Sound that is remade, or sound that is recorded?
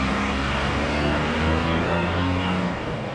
remade